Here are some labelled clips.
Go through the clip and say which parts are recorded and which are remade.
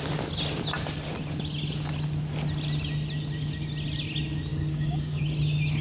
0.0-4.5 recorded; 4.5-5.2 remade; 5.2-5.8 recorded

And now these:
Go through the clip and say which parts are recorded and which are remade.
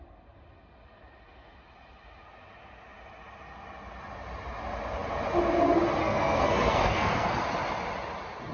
0.0-6.0 recorded; 6.0-7.4 remade; 7.4-8.5 recorded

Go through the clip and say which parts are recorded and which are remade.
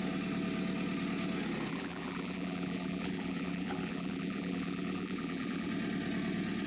0.0-1.7 recorded; 1.7-5.7 remade; 5.7-6.7 recorded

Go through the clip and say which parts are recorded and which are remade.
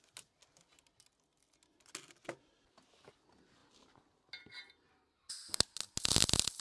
0.0-6.6 recorded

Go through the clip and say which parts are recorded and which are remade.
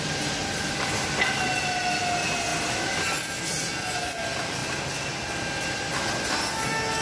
0.0-0.4 recorded; 0.4-1.2 remade; 1.2-2.5 recorded; 2.5-3.7 remade; 3.7-7.0 recorded